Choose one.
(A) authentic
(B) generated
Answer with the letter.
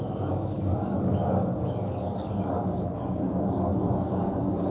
B